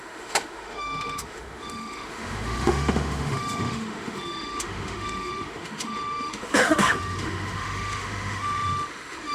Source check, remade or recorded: remade